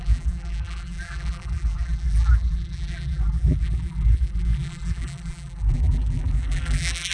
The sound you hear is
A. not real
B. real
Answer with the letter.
A